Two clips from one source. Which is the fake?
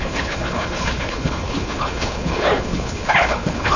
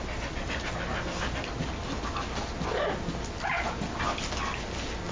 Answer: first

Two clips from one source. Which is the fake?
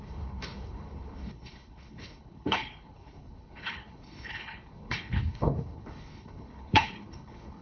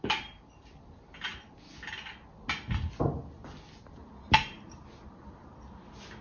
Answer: first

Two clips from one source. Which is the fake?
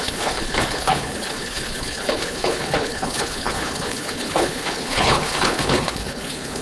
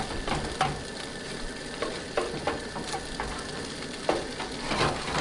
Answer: first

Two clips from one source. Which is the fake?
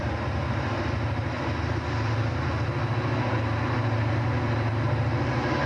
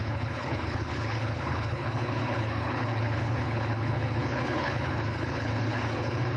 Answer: second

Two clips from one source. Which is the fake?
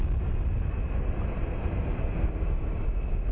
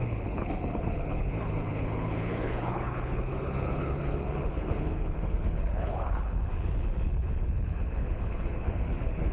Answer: second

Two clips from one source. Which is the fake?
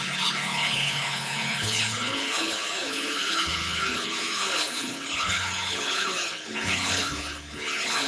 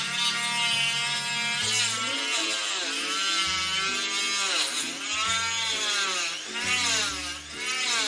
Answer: first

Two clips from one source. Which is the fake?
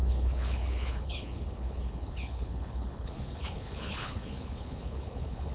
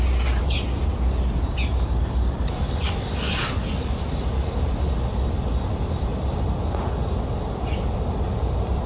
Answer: first